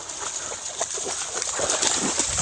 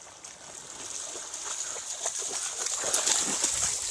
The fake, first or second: first